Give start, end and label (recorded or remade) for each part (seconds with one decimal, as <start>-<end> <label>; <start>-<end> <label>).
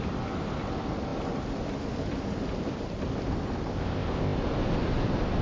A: 0.0-3.7 recorded; 3.7-4.4 remade; 4.4-5.4 recorded